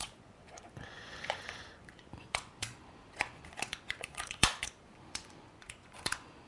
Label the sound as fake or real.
fake